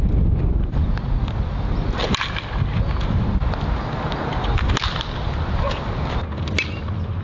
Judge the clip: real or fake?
real